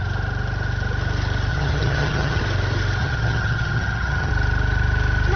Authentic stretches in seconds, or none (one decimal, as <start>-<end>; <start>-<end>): 0.0-1.5; 2.4-3.0; 4.3-5.4